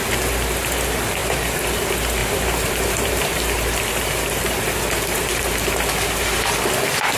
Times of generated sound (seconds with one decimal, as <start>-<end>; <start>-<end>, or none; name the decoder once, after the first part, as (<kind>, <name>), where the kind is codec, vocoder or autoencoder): 1.2-1.8 (vocoder, BigVGAN v2); 2.2-6.5

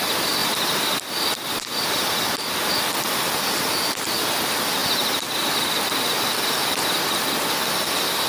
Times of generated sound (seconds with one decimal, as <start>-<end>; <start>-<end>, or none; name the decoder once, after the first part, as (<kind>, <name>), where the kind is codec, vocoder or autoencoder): 0.0-0.4 (vocoder, BigVGAN v2); 2.8-4.8; 6.6-8.3

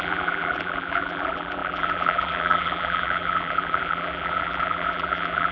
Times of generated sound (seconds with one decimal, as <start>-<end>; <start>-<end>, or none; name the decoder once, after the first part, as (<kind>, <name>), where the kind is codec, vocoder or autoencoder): 0.0-5.5 (vocoder, BigVGAN v2)

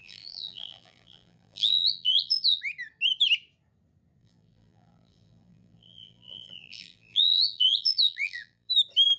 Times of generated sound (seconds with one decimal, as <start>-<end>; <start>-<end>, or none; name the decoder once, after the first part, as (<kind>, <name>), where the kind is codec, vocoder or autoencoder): 0.0-2.6 (vocoder, BigVGAN v2); 4.2-8.7

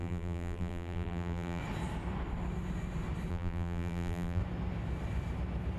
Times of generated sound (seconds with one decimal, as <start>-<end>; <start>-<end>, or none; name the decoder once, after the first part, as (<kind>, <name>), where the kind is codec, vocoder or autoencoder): 0.0-1.6 (vocoder, BigVGAN v2); 3.3-4.4

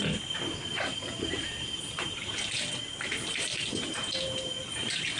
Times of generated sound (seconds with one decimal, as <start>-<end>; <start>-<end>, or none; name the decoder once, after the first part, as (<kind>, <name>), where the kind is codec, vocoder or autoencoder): 0.9-2.7 (vocoder, BigVGAN v2); 3.5-4.1